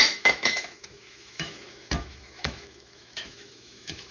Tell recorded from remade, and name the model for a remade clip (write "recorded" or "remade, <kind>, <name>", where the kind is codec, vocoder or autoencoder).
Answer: remade, autoencoder, DAC-VAE